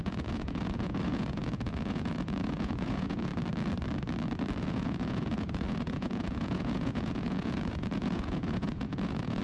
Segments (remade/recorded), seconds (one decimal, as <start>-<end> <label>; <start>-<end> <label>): 0.0-3.3 remade; 3.3-4.6 recorded; 4.6-9.4 remade